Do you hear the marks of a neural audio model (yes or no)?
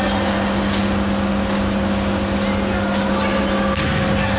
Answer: no